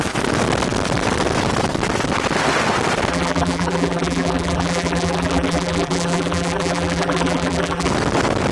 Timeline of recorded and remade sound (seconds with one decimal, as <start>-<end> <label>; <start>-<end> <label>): 0.0-3.1 recorded; 3.1-7.9 remade; 7.9-8.5 recorded